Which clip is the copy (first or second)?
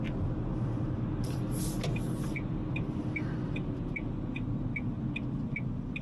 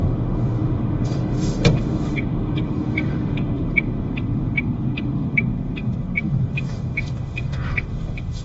second